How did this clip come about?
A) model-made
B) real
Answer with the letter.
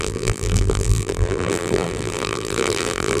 A